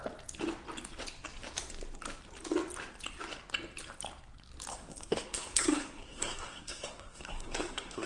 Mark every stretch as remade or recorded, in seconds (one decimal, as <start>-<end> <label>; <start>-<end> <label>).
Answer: 0.0-4.7 recorded; 4.7-8.1 remade